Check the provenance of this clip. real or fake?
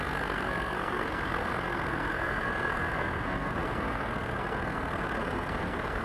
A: fake